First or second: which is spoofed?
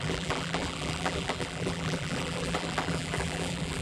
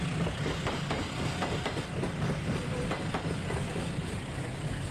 first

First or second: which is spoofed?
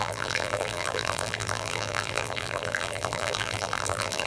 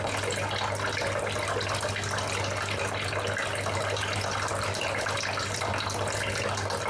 first